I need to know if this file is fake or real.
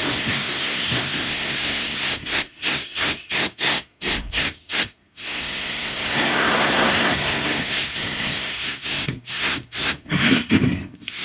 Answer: fake